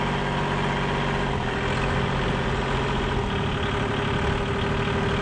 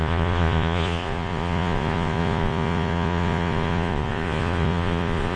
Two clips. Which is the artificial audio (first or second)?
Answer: second